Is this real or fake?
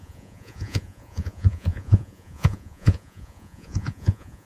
fake